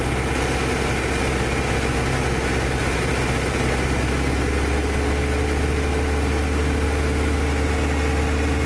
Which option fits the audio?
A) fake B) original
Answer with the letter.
B